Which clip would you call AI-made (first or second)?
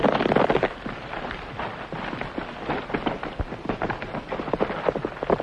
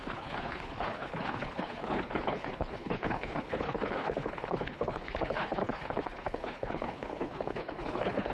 second